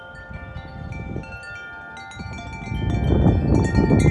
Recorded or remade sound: recorded